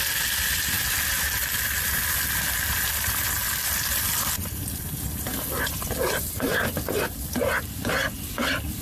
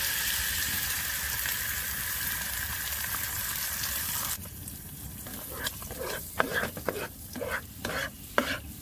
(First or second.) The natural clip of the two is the first